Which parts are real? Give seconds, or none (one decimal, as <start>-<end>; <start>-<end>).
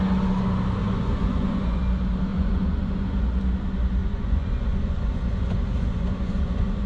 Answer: 0.0-0.8; 1.8-2.3; 3.4-4.0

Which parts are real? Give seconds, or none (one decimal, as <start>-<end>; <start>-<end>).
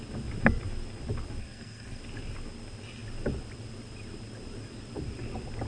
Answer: 0.0-1.4; 2.0-5.7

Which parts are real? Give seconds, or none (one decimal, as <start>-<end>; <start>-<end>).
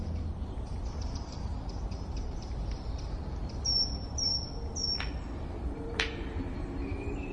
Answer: 4.3-5.4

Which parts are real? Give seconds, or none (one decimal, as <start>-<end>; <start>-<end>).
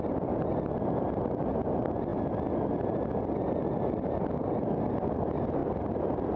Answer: 0.0-6.4